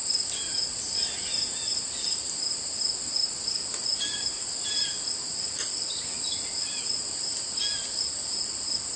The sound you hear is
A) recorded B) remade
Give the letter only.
A